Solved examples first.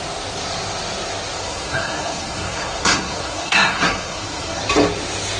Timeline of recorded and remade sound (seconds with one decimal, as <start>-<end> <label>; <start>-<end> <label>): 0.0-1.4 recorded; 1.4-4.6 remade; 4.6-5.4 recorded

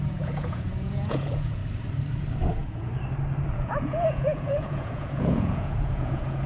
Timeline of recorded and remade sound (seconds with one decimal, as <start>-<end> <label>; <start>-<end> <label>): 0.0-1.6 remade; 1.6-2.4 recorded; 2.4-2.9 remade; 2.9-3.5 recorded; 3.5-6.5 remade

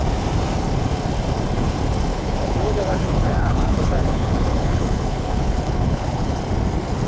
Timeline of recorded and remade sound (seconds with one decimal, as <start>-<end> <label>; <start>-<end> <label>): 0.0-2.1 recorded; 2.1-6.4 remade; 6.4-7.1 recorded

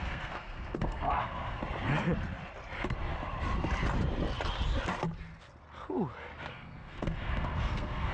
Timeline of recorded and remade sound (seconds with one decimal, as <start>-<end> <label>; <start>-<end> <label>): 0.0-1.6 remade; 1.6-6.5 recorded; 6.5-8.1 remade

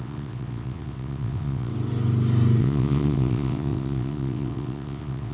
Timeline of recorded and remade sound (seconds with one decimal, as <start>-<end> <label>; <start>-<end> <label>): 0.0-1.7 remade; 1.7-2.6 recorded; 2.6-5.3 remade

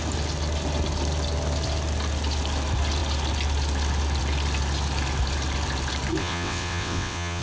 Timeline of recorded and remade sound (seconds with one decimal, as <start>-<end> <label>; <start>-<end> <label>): 0.0-6.2 recorded; 6.2-7.4 remade

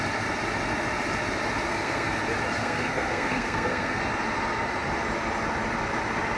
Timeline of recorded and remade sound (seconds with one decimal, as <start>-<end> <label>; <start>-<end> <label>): 0.0-1.7 recorded; 1.7-2.2 remade; 2.2-2.6 recorded; 2.6-4.0 remade; 4.0-6.4 recorded